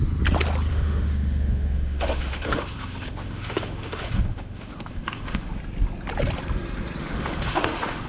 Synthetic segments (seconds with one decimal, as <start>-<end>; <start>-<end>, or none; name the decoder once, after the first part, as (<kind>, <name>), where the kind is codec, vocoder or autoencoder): 0.7-5.6 (autoencoder, DAC-VAE); 7.0-8.1